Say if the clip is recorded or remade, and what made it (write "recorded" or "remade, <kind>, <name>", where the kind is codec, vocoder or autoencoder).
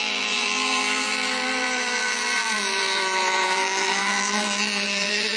remade, vocoder, BigVGAN v2